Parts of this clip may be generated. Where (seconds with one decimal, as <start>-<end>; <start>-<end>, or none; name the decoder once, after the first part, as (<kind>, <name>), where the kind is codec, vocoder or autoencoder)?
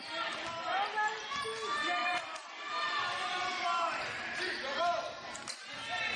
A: 2.0-2.5 (vocoder, BigVGAN v2)